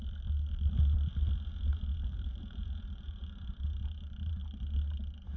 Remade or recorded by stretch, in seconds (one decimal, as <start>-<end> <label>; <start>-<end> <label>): 0.0-1.9 recorded; 1.9-4.4 remade; 4.4-5.4 recorded